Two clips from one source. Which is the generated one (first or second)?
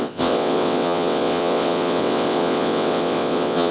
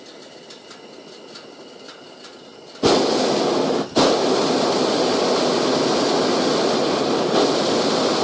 first